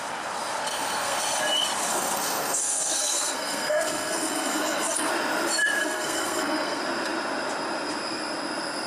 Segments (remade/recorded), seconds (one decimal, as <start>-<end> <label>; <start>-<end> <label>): 0.0-0.7 recorded; 0.7-1.4 remade; 1.4-1.9 recorded; 1.9-5.1 remade; 5.1-5.8 recorded; 5.8-6.8 remade; 6.8-8.9 recorded